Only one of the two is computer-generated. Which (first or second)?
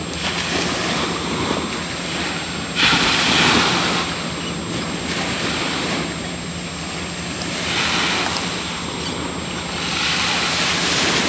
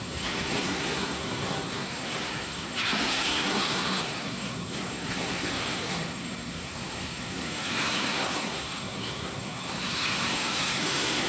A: second